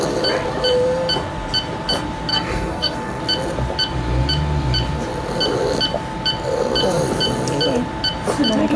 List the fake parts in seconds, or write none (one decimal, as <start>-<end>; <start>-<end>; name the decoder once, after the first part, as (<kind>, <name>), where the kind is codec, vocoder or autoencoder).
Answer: 2.3-3.2 (codec, SNAC)